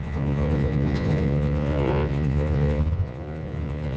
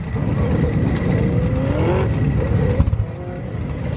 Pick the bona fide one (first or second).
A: second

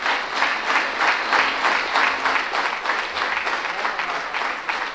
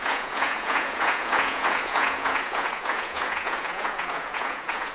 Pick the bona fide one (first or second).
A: first